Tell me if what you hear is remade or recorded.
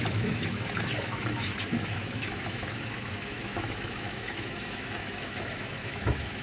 remade